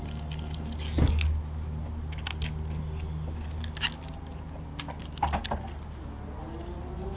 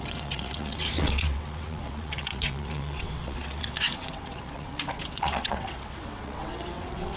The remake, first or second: second